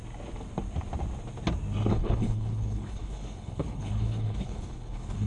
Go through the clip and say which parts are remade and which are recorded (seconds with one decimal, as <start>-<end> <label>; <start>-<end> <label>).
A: 0.0-1.9 recorded; 1.9-5.3 remade

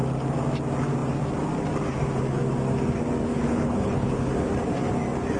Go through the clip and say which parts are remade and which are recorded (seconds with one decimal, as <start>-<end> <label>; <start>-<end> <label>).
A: 0.0-3.2 recorded; 3.2-4.3 remade; 4.3-5.4 recorded

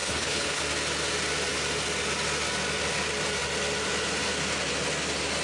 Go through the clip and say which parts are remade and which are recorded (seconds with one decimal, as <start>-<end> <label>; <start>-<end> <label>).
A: 0.0-0.6 remade; 0.6-5.4 recorded

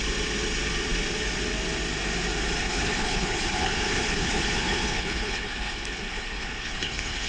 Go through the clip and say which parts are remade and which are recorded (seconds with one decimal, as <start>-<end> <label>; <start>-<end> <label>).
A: 0.0-2.6 recorded; 2.6-7.3 remade

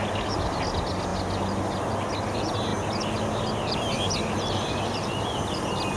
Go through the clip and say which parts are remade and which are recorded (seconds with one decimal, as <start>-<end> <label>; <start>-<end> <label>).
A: 0.0-6.0 recorded

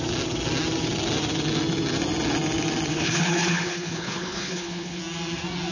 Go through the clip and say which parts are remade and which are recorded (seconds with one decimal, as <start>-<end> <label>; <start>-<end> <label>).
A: 0.0-2.9 recorded; 2.9-5.0 remade; 5.0-5.7 recorded

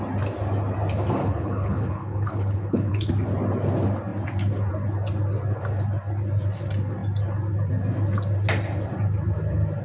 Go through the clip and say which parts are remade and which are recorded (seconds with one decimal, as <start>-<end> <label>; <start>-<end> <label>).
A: 0.0-1.2 recorded; 1.2-3.1 remade; 3.1-9.8 recorded